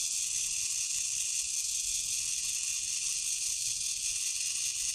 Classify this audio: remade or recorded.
recorded